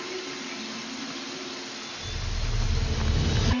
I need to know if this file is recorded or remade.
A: recorded